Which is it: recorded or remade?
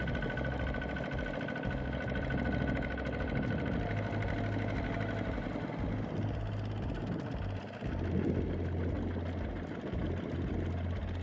recorded